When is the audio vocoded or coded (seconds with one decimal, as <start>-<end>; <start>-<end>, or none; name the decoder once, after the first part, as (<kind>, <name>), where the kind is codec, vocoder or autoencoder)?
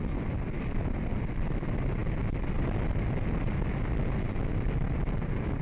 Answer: none